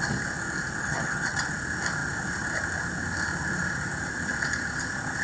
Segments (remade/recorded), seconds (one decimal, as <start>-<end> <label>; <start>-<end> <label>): 0.0-0.8 recorded; 0.8-1.4 remade; 1.4-5.2 recorded